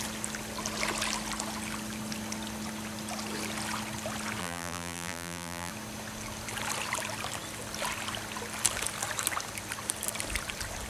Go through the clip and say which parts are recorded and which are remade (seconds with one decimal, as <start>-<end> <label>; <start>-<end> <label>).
0.0-4.4 recorded; 4.4-5.7 remade; 5.7-10.9 recorded